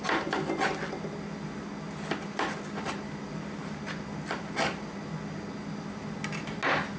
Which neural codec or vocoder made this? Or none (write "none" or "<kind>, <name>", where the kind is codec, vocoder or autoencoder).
none